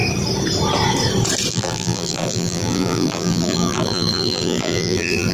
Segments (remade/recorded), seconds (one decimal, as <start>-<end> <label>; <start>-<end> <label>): 0.0-1.5 recorded; 1.5-5.3 remade